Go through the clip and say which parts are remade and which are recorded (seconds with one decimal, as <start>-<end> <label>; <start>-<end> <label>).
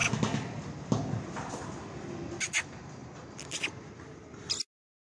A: 0.0-5.0 recorded